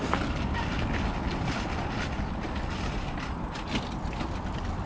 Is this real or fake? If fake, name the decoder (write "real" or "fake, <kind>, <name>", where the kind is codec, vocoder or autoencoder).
real